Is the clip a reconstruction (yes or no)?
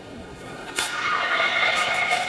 yes